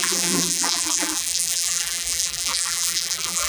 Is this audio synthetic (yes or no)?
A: yes